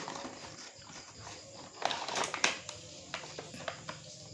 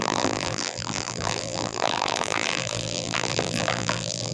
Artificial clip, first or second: second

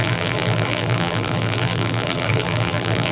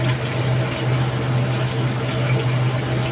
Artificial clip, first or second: first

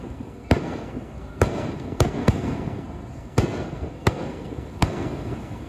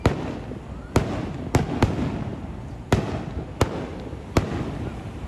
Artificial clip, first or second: first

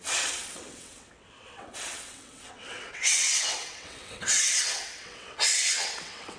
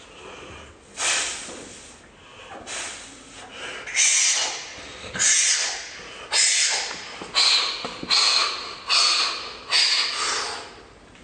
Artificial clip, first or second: first